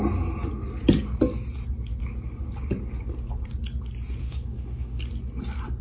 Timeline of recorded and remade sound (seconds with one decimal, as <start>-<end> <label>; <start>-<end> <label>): 0.0-4.2 recorded; 4.2-5.0 remade; 5.0-5.8 recorded

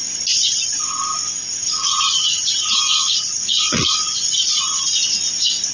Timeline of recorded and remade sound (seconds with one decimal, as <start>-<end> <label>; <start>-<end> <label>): 0.0-1.6 recorded; 1.6-5.0 remade; 5.0-5.7 recorded

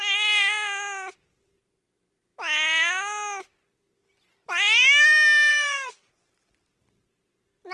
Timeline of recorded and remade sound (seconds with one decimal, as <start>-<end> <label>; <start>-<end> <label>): 0.0-5.5 recorded; 5.5-6.1 remade; 6.1-7.7 recorded

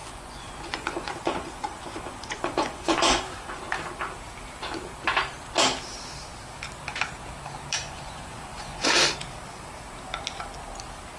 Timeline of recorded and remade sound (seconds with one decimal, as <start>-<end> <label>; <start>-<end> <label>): 0.0-3.6 remade; 3.6-7.8 recorded; 7.8-8.9 remade; 8.9-11.2 recorded

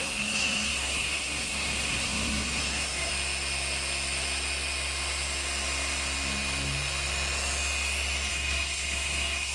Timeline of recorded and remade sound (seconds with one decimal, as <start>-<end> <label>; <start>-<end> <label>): 0.0-3.1 remade; 3.1-8.3 recorded; 8.3-9.5 remade

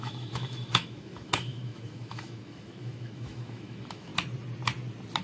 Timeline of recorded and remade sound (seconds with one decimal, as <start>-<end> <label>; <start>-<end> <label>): 0.0-4.1 remade; 4.1-5.2 recorded

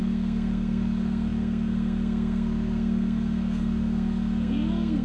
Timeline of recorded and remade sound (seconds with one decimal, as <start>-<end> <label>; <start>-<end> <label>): 0.0-5.0 remade